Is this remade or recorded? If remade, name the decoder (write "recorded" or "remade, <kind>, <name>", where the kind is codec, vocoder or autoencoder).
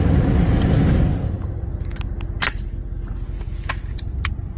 recorded